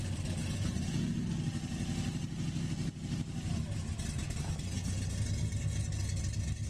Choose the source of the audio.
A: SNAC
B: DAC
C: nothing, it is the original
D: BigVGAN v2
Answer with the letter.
C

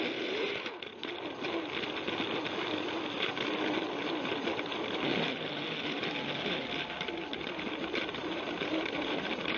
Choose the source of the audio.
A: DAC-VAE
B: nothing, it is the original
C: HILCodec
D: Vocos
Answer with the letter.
B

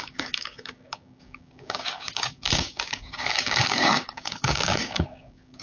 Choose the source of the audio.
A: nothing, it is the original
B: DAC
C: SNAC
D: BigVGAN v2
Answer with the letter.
B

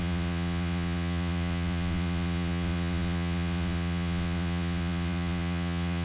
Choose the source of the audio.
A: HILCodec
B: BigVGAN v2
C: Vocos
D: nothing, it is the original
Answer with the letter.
C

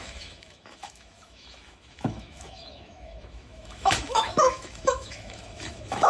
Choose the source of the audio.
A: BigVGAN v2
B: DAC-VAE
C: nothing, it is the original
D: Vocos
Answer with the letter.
B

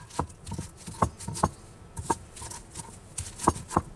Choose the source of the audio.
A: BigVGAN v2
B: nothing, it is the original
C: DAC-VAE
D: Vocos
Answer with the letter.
B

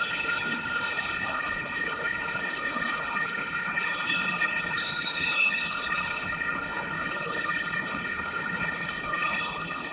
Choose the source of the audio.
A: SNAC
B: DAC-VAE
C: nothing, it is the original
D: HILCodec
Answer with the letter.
D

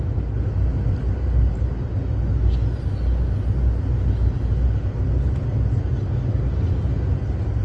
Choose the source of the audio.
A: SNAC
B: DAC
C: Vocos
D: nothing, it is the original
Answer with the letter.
D